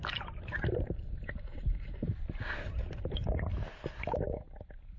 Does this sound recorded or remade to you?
recorded